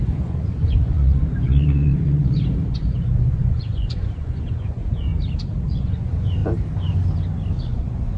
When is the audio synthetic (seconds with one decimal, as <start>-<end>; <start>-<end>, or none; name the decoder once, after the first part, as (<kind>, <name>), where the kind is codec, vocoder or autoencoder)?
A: 0.0-5.1 (vocoder, Vocos); 5.6-6.4; 7.6-8.2